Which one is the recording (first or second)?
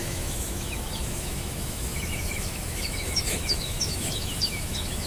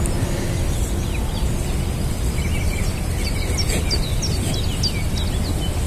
second